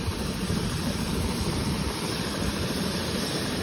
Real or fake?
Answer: fake